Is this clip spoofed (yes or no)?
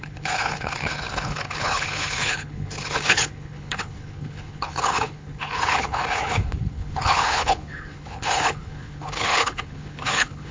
yes